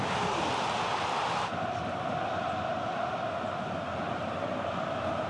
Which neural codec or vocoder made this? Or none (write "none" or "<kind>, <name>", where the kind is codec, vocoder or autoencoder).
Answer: none